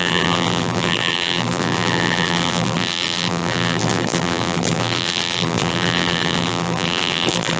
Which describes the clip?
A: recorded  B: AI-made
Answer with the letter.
B